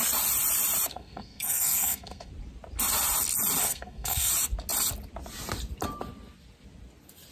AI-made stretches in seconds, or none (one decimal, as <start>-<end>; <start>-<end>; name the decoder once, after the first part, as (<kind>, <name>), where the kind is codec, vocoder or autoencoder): 0.9-2.3 (codec, SNAC); 3.6-4.3